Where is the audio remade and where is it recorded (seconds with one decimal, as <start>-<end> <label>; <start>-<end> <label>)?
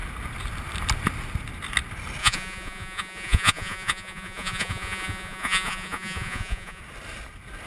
0.0-2.2 recorded; 2.2-6.8 remade; 6.8-7.7 recorded